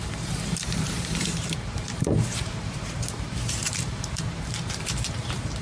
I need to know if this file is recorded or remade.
remade